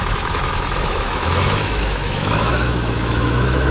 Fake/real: fake